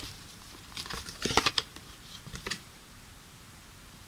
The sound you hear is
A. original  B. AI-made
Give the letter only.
B